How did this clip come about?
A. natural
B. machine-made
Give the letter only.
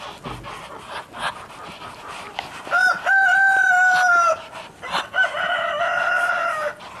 A